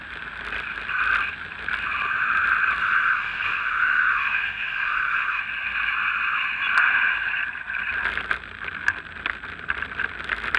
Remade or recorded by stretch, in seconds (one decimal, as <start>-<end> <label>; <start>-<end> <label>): 0.0-2.8 recorded; 2.8-5.4 remade; 5.4-10.6 recorded